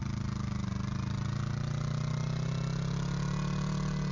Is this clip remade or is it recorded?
recorded